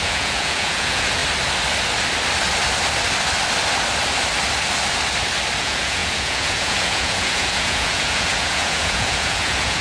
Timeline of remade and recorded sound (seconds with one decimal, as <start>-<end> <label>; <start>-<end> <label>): 0.0-1.2 remade; 1.2-5.6 recorded; 5.6-9.8 remade